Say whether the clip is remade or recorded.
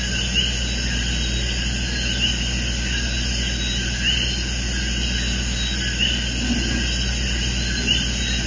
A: recorded